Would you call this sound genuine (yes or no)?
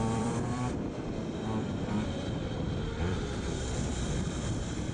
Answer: no